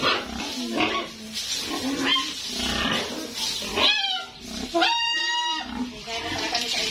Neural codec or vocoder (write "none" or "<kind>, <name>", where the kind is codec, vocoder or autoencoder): none